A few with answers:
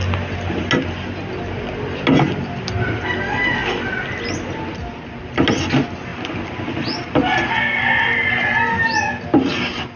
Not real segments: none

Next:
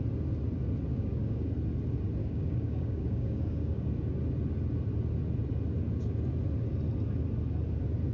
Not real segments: 0.9-1.5 (codec, DAC); 2.2-3.9

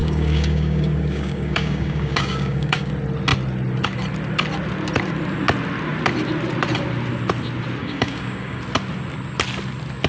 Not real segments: 0.0-2.9 (codec, DAC); 7.8-8.6

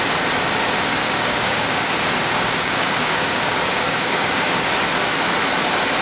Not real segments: 1.0-4.6 (codec, DAC)

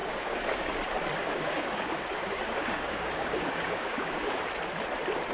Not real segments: 0.0-0.7 (codec, DAC); 1.2-4.4

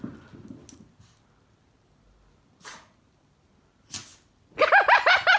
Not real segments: none

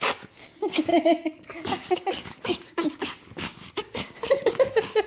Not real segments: 0.0-5.1 (codec, DAC)